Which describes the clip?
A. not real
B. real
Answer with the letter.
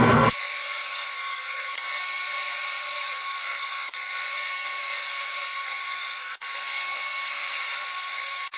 A